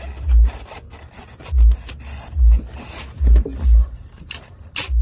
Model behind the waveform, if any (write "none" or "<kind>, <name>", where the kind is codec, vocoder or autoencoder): none